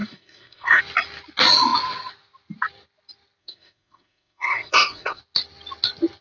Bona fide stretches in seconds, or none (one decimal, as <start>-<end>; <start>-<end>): 0.8-3.4; 5.2-6.2